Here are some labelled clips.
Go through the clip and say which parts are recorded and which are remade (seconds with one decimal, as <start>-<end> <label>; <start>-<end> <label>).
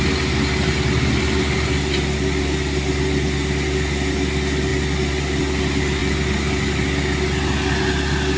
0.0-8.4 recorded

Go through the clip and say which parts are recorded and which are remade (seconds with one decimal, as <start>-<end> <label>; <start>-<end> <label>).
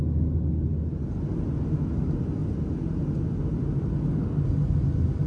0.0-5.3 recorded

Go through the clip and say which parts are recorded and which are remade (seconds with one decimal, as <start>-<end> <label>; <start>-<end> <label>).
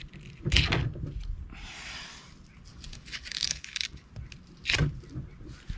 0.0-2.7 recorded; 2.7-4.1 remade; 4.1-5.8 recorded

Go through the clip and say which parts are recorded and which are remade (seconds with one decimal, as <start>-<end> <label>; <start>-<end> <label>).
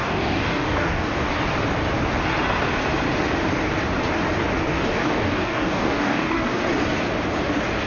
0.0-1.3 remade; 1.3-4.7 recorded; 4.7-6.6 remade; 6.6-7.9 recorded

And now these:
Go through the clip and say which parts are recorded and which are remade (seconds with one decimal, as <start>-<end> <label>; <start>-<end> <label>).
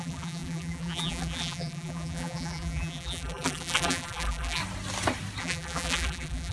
0.0-4.6 remade; 4.6-5.4 recorded; 5.4-6.5 remade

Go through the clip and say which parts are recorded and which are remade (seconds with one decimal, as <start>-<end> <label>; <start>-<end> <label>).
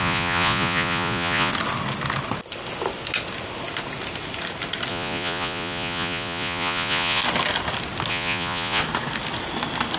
0.0-1.5 remade; 1.5-4.9 recorded; 4.9-7.2 remade; 7.2-8.1 recorded; 8.1-8.8 remade; 8.8-10.0 recorded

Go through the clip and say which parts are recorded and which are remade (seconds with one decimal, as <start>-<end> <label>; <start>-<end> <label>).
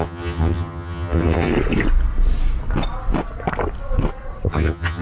0.0-1.5 remade; 1.5-4.5 recorded; 4.5-5.0 remade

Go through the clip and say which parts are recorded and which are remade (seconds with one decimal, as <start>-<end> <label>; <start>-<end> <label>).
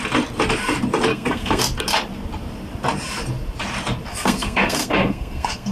0.0-1.1 recorded; 1.1-1.6 remade; 1.6-4.1 recorded; 4.1-5.7 remade